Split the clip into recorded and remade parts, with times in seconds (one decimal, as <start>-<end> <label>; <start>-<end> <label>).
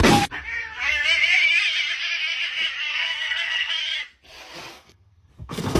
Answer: 0.0-2.9 recorded; 2.9-3.7 remade; 3.7-4.7 recorded; 4.7-5.8 remade